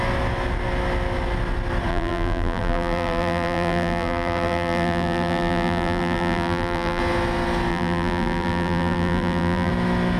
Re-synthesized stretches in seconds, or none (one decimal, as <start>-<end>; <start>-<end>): 1.9-7.0; 7.7-9.7